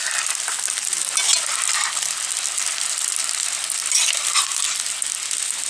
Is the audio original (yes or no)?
yes